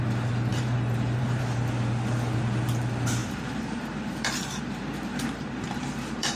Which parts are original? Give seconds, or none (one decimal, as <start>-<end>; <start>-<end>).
0.0-0.5; 1.4-3.2